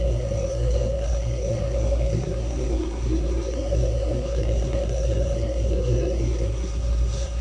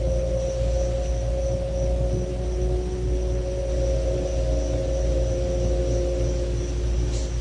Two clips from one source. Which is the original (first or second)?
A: second